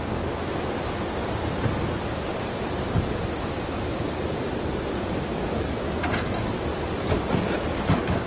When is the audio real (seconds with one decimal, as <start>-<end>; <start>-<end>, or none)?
0.0-1.2; 5.4-6.7; 7.9-8.3

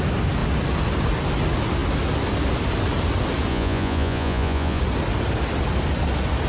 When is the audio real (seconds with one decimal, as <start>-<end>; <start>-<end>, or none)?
0.0-3.5; 4.8-6.5

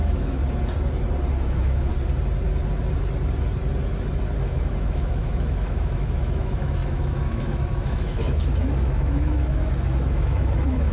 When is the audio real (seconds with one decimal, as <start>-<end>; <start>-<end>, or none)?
0.4-1.4; 1.9-4.5

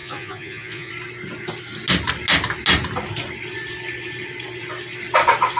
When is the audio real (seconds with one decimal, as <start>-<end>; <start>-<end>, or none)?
0.9-5.6

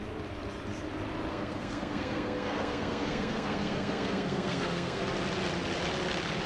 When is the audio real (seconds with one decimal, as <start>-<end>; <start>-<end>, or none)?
0.0-1.3; 5.0-6.5

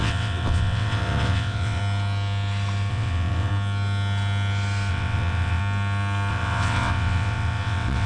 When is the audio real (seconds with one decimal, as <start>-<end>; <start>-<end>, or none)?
1.8-2.9; 3.5-4.9; 5.6-6.3

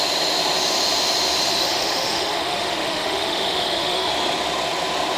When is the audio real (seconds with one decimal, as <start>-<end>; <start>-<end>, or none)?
0.0-1.5; 4.1-5.2

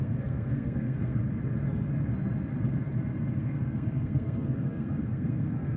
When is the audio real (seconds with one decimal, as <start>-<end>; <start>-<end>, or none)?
1.2-3.4